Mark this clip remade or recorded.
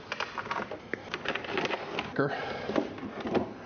recorded